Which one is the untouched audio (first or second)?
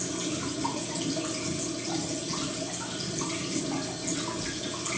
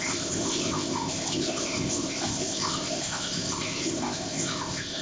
first